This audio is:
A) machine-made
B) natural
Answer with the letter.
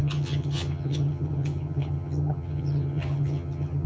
A